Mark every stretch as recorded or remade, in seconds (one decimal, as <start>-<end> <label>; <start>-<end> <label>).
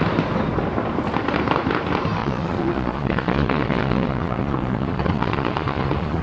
0.0-2.2 recorded; 2.2-6.2 remade